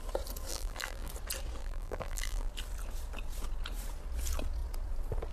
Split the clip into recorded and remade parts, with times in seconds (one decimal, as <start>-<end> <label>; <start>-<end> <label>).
0.0-0.5 recorded; 0.5-1.1 remade; 1.1-1.6 recorded; 1.6-2.5 remade; 2.5-5.3 recorded